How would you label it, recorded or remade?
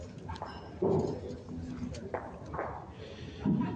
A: recorded